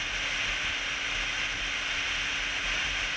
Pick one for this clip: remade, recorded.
recorded